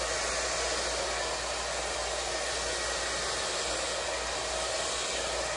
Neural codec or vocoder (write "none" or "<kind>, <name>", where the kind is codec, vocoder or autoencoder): none